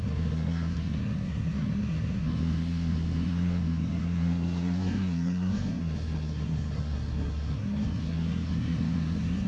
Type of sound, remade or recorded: remade